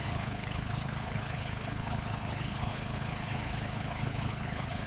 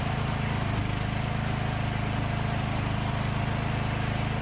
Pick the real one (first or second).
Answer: second